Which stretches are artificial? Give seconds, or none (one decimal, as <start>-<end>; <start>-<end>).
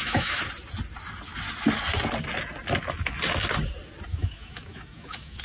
0.0-0.5; 4.1-5.4